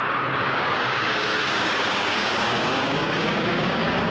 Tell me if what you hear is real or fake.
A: fake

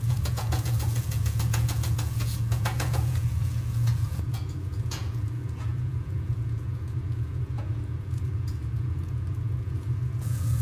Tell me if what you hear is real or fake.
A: fake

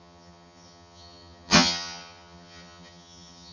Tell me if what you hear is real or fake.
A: fake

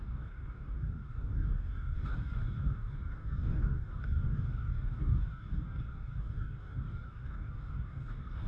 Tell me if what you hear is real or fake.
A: fake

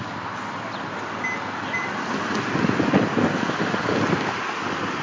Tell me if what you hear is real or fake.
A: real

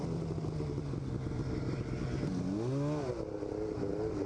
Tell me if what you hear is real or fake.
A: real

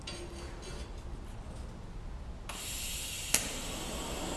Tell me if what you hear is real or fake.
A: real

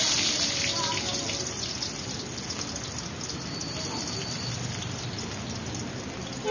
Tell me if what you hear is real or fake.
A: real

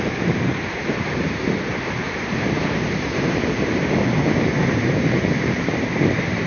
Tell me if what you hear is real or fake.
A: fake